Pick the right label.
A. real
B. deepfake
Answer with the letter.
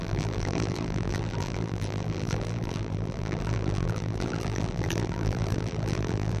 B